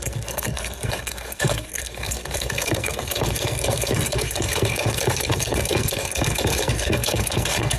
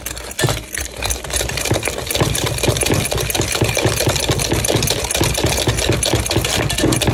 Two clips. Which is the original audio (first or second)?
second